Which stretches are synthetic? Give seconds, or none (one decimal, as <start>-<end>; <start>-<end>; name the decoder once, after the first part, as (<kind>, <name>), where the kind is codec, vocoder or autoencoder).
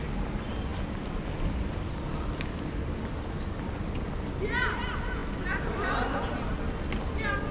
none